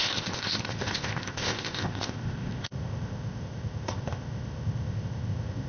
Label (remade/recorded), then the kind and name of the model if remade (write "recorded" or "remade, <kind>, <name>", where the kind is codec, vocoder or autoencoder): remade, codec, ZipCodec